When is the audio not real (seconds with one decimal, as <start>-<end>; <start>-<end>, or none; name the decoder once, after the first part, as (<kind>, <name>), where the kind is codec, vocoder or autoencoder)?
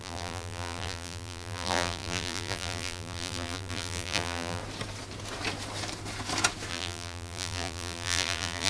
0.0-4.6 (vocoder, BigVGAN v2); 6.7-8.7